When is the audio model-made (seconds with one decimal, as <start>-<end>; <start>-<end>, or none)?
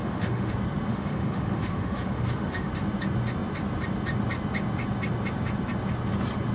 0.0-0.5; 0.9-2.7